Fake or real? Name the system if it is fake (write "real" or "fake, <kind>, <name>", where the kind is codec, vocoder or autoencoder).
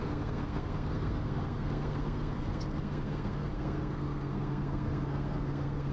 fake, codec, SNAC